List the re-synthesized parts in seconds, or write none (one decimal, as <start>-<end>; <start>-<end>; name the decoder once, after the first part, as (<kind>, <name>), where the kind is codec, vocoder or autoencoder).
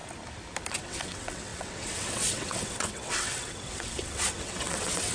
0.7-5.1 (vocoder, WaveNeXt)